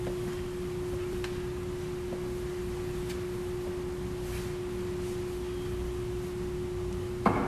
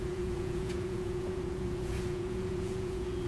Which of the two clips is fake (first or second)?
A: second